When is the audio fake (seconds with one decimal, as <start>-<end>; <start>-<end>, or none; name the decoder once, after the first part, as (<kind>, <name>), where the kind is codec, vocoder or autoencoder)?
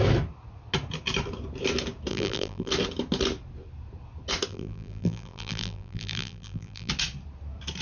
2.1-2.7 (vocoder, BigVGAN v2); 4.5-6.9